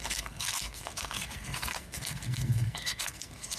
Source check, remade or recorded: remade